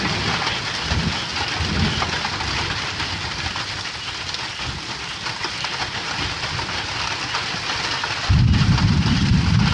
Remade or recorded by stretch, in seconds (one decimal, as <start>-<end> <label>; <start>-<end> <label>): 0.0-9.7 recorded